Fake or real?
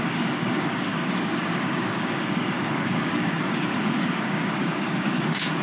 fake